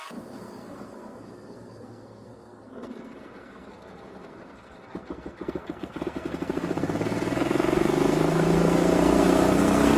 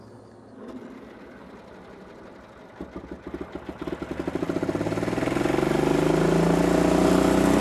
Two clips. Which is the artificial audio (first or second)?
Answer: first